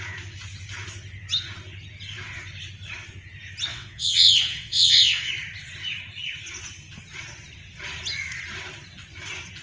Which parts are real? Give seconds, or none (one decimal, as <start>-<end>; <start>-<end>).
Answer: 0.0-3.7; 5.3-9.6